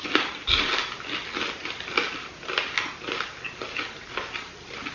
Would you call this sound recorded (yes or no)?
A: yes